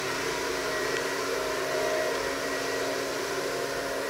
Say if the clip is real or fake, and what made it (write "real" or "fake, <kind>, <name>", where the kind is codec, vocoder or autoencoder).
fake, vocoder, BigVGAN v2